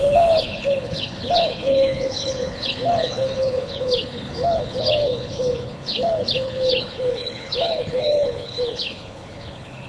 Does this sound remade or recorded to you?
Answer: remade